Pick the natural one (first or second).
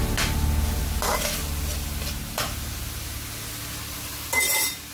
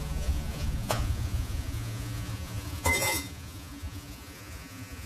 first